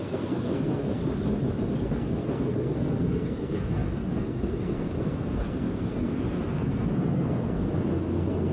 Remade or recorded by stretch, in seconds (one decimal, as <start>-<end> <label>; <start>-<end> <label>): 0.0-1.0 remade; 1.0-1.8 recorded; 1.8-8.5 remade